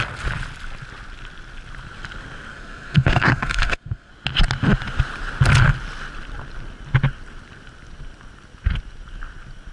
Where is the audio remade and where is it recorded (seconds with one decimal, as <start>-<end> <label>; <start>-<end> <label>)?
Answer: 0.0-2.5 recorded; 2.5-4.1 remade; 4.1-9.7 recorded